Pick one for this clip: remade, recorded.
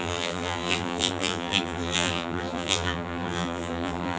remade